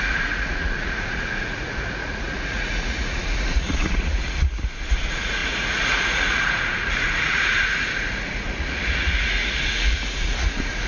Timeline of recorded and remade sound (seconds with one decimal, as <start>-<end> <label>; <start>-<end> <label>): 0.0-10.9 remade